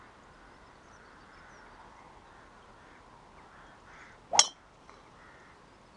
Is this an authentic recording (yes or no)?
yes